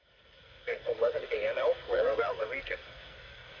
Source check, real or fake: fake